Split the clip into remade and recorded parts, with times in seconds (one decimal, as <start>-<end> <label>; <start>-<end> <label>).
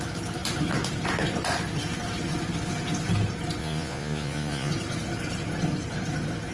0.0-3.6 recorded; 3.6-4.7 remade; 4.7-6.5 recorded